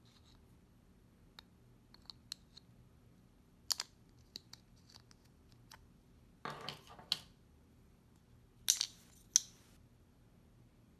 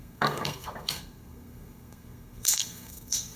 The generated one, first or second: second